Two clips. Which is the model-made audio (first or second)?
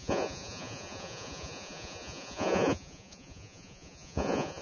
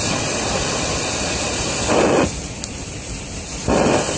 first